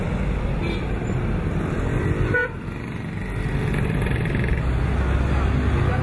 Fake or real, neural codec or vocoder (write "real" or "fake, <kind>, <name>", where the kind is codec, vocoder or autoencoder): real